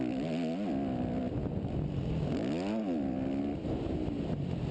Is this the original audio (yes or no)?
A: yes